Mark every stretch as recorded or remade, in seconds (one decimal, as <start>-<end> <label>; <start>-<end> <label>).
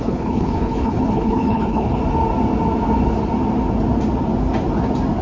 0.0-2.0 remade; 2.0-5.2 recorded